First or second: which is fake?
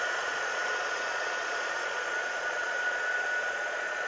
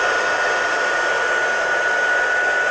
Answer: first